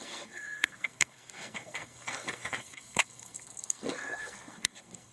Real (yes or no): no